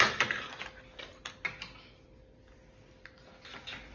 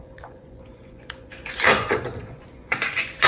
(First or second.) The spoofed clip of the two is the second